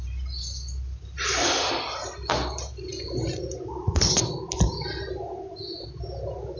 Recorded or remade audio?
recorded